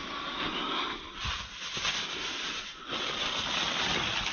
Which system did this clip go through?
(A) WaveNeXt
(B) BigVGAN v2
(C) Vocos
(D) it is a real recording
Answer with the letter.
D